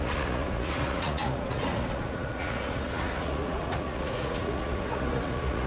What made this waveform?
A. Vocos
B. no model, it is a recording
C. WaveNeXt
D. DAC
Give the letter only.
A